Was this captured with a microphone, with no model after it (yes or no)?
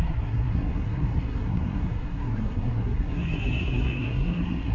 no